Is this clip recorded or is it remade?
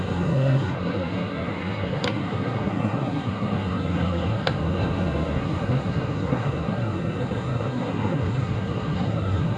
remade